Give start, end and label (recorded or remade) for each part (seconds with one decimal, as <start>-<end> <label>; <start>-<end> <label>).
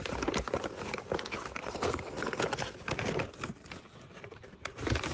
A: 0.0-1.6 recorded; 1.6-2.4 remade; 2.4-5.1 recorded